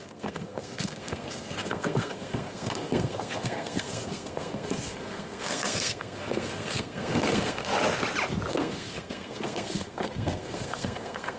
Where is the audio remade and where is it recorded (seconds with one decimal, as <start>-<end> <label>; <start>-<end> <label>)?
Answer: 0.0-7.7 remade; 7.7-8.5 recorded; 8.5-11.4 remade